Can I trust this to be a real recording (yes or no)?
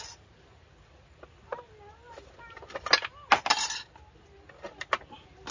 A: yes